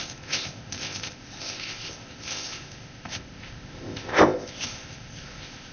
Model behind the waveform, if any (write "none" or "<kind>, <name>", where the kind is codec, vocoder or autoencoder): codec, ZipCodec